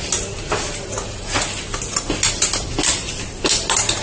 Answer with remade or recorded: recorded